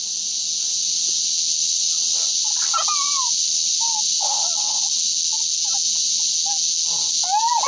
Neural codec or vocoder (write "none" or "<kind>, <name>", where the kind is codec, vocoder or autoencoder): none